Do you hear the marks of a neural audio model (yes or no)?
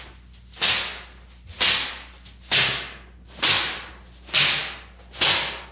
no